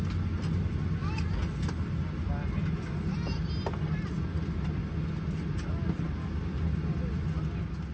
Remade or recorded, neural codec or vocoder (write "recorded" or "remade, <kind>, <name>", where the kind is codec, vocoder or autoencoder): recorded